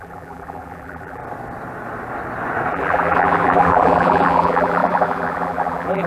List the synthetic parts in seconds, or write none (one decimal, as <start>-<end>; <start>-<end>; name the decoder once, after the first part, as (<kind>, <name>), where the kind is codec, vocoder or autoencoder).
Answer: 0.0-1.2 (vocoder, BigVGAN v2); 2.7-6.1